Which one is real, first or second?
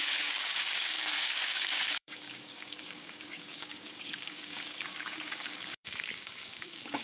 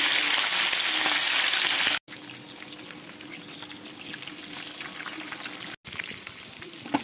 second